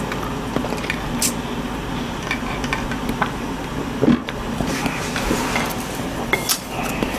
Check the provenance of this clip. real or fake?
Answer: real